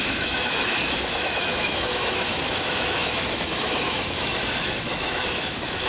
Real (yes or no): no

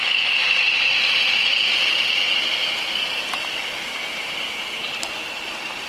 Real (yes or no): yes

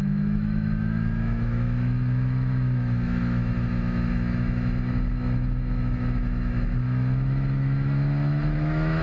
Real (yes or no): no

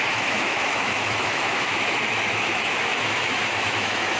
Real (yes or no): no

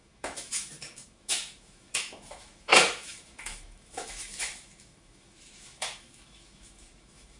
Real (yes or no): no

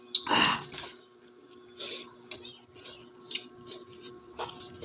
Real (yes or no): yes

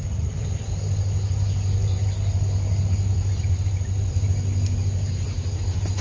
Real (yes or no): yes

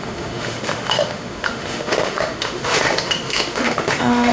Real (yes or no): no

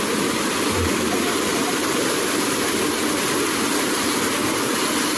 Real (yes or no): yes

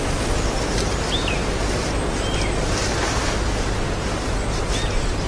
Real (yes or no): yes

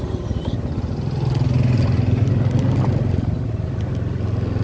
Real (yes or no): yes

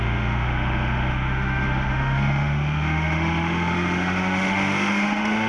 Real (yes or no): no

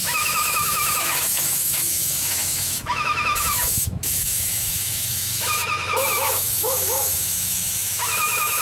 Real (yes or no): no